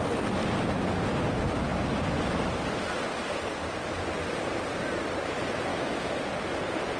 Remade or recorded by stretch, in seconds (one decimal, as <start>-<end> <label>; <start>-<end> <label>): 0.0-5.7 recorded; 5.7-6.2 remade; 6.2-7.0 recorded